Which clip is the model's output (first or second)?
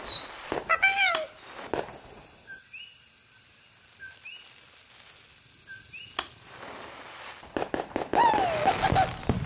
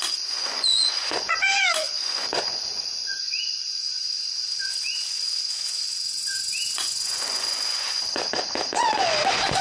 second